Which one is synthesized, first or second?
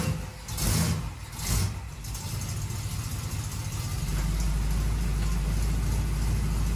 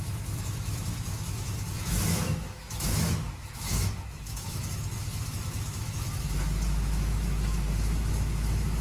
second